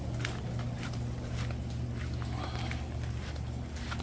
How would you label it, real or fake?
real